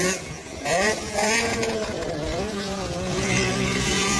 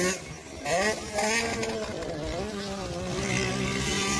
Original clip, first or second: second